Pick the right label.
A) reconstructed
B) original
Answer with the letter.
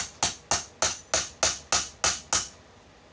B